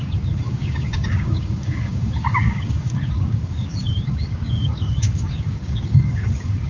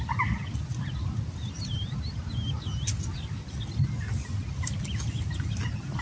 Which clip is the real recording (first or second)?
second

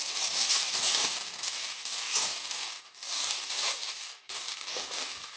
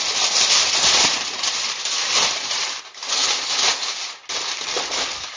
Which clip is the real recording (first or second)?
second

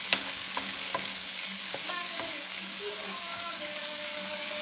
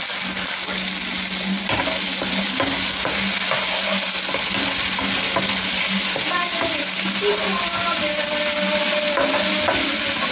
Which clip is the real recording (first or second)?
second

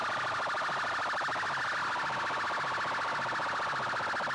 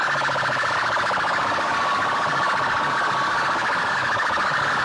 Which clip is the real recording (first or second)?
first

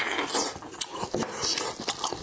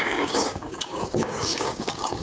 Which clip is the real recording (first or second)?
first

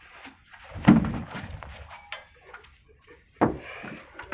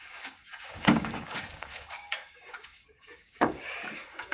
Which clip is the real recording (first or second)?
first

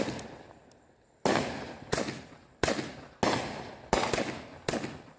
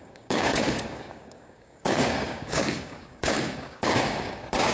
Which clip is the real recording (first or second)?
first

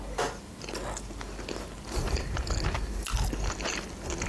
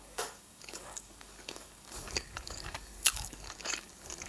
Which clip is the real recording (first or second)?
first